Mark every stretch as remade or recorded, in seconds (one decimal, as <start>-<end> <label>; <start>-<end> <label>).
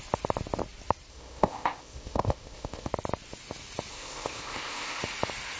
0.0-1.1 recorded; 1.1-2.9 remade; 2.9-3.9 recorded; 3.9-5.0 remade; 5.0-5.6 recorded